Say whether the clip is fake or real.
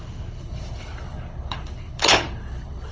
fake